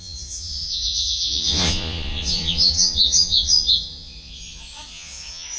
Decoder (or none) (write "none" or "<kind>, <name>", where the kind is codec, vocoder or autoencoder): vocoder, Vocos